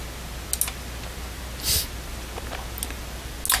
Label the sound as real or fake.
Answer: real